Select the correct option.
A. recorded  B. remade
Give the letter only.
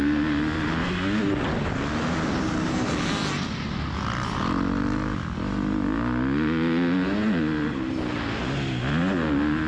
A